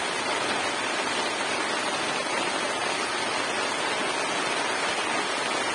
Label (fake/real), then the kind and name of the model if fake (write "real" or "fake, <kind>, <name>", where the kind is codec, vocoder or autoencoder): real